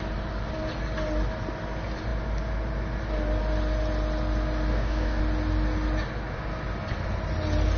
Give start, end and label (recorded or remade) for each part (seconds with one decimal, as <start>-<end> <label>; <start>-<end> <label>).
0.0-4.7 recorded; 4.7-5.2 remade; 5.2-7.8 recorded